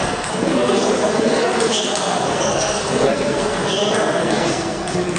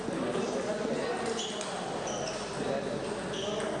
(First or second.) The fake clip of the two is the first